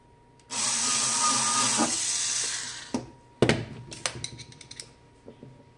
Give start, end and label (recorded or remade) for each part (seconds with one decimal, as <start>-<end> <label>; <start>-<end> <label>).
0.0-5.8 recorded